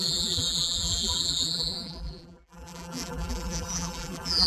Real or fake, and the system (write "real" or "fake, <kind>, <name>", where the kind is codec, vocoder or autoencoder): fake, vocoder, BigVGAN v2